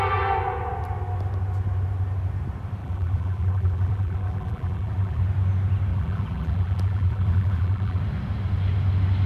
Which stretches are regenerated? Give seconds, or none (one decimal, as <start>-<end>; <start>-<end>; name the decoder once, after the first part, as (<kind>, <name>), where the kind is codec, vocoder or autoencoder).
2.8-5.2 (vocoder, BigVGAN v2); 5.9-8.0